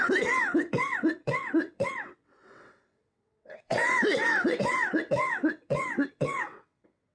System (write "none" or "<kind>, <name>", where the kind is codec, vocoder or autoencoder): vocoder, WaveNeXt